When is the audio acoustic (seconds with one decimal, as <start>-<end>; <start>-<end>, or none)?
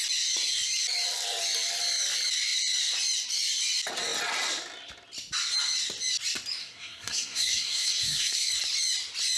0.0-6.6; 8.5-9.4